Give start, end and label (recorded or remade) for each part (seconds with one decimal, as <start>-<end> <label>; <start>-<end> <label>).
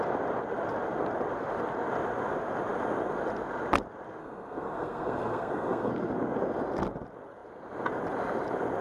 0.0-4.2 recorded; 4.2-5.9 remade; 5.9-8.8 recorded